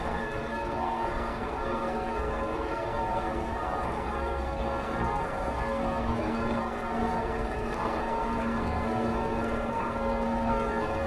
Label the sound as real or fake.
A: fake